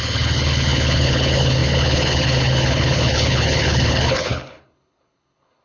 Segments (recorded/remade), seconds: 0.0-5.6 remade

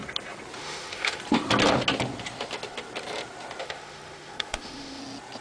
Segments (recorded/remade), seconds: 0.0-0.6 recorded; 0.6-1.2 remade; 1.2-3.6 recorded; 3.6-5.0 remade; 5.0-5.4 recorded

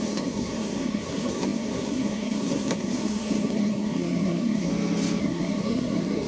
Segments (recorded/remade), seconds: 0.0-4.7 remade; 4.7-5.2 recorded; 5.2-6.3 remade

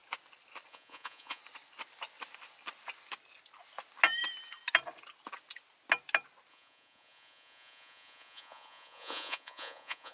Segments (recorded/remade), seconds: 0.0-0.7 recorded; 0.7-1.4 remade; 1.4-6.5 recorded; 6.5-10.1 remade

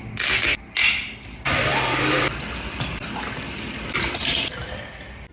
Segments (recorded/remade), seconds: 0.0-0.8 recorded; 0.8-4.0 remade; 4.0-5.3 recorded